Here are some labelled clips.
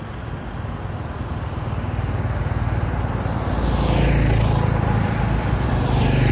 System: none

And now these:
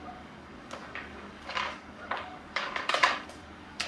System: codec, DAC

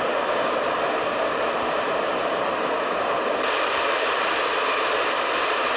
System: none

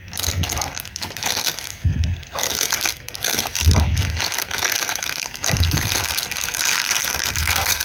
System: codec, SNAC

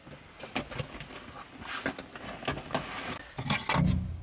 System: none